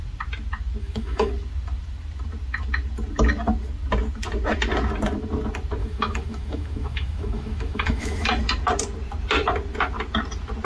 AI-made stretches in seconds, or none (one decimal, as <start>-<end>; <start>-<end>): 0.8-1.3; 5.8-8.3